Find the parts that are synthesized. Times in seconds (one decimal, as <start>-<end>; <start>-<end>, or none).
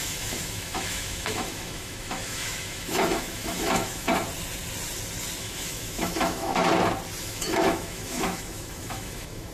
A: 0.0-4.1; 5.4-6.6; 7.2-9.5